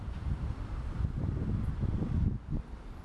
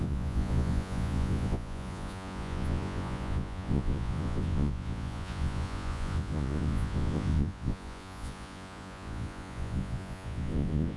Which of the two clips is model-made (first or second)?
second